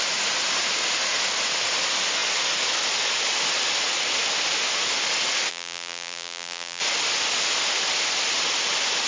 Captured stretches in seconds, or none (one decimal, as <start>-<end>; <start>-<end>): 0.0-5.5; 6.8-9.1